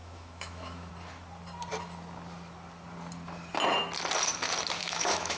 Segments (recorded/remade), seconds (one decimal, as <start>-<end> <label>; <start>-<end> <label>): 0.0-0.9 remade; 0.9-4.8 recorded; 4.8-5.4 remade